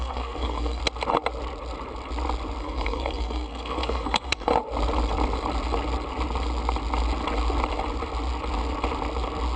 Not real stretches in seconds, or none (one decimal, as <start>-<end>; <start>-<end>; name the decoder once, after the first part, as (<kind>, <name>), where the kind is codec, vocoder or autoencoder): 0.0-0.8 (codec, SNAC); 2.6-4.5